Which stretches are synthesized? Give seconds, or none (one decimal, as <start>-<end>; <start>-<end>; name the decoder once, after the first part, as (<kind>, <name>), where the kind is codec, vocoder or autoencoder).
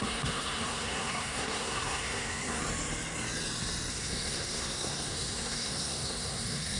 0.0-2.6 (codec, SNAC); 3.9-6.8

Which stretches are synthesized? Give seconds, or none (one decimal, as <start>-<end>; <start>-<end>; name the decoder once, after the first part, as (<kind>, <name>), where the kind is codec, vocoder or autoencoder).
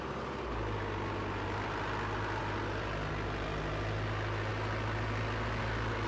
none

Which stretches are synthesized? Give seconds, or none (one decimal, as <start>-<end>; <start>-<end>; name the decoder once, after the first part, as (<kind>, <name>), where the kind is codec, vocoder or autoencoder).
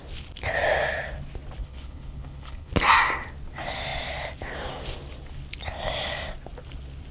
1.6-2.7 (codec, HILCodec)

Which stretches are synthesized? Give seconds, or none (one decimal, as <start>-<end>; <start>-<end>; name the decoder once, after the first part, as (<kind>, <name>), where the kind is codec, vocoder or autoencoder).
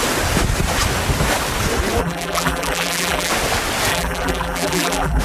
2.0-3.3 (vocoder, BigVGAN v2); 3.9-5.2